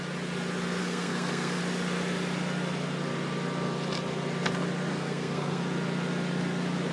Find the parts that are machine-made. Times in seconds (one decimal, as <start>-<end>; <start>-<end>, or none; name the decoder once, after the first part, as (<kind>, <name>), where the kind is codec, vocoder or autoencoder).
0.8-1.6 (codec, SNAC); 4.9-5.6